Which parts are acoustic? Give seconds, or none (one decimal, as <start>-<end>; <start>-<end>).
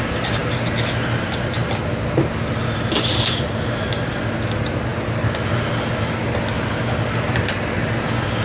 0.0-8.4